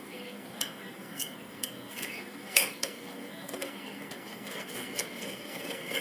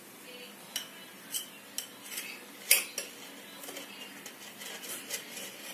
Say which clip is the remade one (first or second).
first